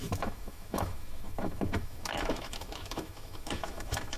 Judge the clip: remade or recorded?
remade